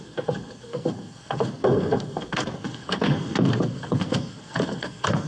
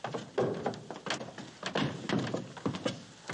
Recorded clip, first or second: second